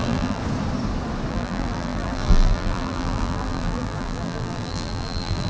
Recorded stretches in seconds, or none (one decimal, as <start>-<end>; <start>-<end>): 0.4-1.3